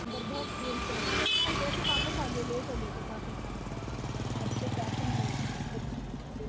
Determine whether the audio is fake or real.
real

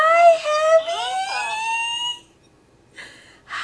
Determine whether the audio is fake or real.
real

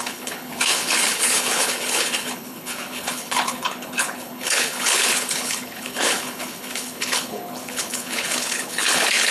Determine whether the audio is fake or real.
fake